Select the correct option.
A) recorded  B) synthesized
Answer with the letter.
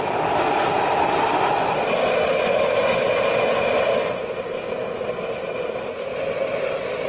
A